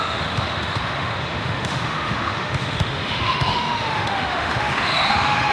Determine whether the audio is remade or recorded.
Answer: remade